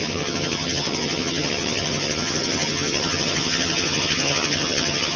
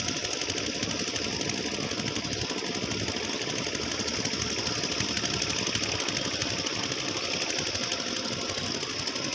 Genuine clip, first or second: second